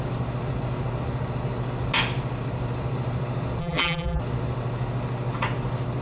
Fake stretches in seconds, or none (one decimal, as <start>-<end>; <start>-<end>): 3.6-4.2